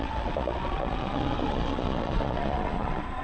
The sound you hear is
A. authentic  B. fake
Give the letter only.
B